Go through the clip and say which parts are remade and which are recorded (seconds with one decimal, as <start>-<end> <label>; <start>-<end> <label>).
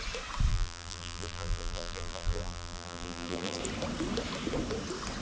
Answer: 0.0-0.5 recorded; 0.5-3.6 remade; 3.6-5.2 recorded